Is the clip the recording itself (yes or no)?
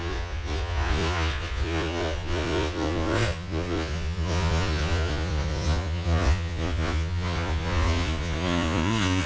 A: no